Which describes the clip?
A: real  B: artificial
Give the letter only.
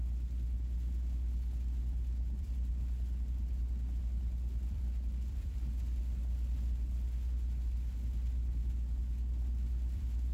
B